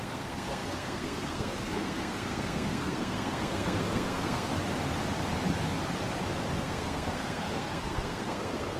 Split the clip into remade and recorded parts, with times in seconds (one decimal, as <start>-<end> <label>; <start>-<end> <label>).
0.0-4.5 remade; 4.5-6.5 recorded; 6.5-8.8 remade